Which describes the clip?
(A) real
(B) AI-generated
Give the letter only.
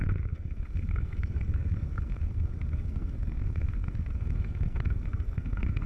B